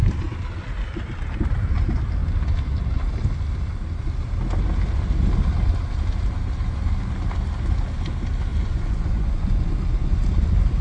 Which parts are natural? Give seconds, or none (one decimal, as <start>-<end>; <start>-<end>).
0.0-8.5; 10.1-10.8